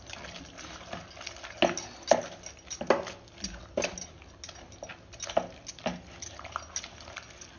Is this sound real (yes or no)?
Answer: yes